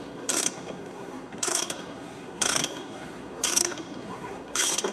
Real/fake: fake